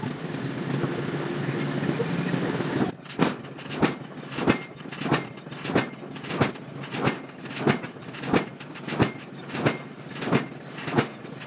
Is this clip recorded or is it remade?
recorded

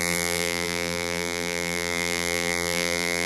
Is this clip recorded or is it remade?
remade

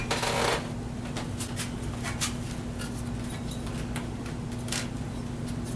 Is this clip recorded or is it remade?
recorded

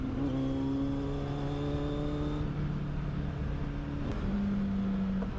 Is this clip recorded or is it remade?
recorded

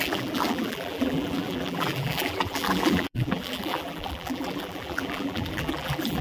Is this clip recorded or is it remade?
remade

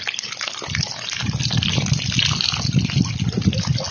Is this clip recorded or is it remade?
recorded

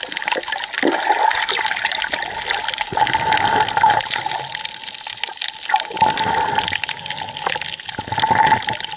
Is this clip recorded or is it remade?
recorded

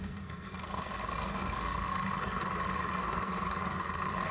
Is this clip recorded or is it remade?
remade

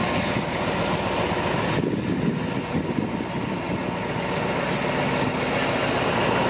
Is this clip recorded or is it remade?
recorded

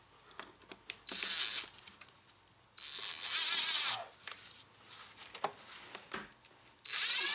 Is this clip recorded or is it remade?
recorded